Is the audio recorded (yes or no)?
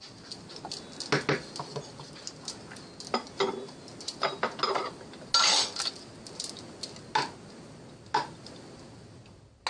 yes